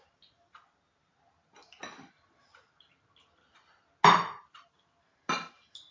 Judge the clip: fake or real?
real